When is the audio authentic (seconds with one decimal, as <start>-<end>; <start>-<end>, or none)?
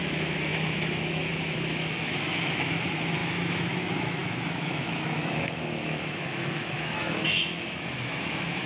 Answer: none